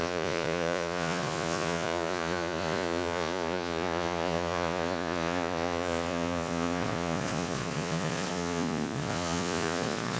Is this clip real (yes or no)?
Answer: no